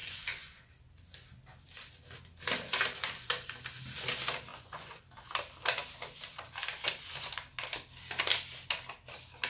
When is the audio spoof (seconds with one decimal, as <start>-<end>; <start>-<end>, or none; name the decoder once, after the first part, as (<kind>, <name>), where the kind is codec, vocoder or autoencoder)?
0.0-0.7 (vocoder, Vocos); 4.5-5.0